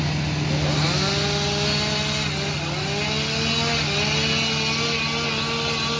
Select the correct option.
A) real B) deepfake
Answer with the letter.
A